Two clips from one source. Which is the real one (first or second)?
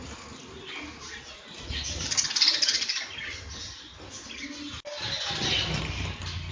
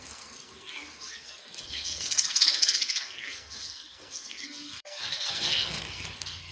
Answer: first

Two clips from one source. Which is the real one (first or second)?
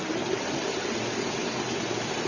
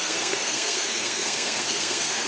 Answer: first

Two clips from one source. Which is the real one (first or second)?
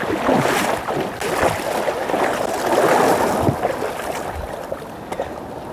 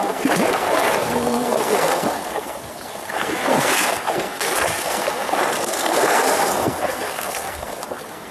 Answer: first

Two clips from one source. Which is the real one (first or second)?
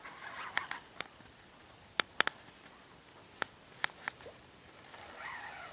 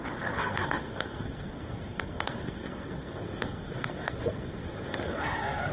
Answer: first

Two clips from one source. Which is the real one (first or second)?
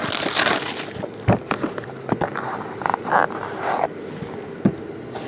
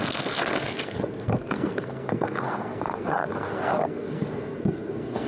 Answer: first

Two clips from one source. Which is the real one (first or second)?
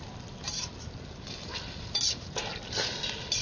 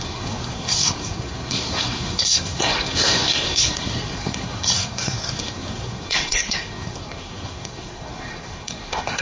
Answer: first